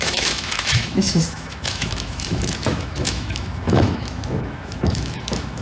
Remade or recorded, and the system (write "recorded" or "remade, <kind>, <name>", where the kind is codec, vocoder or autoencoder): remade, autoencoder, DAC-VAE